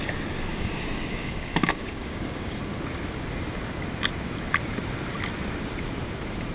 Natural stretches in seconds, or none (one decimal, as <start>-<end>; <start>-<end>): 0.0-0.5; 2.6-6.5